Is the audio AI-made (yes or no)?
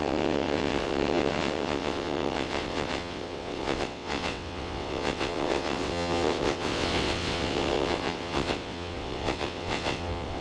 yes